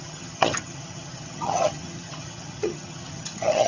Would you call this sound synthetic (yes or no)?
yes